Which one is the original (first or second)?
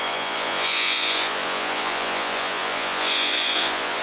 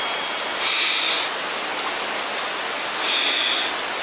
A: second